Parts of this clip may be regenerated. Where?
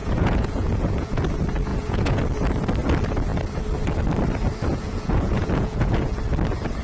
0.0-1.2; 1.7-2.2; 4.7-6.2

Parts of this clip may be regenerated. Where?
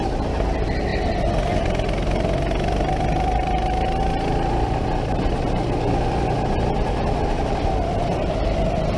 none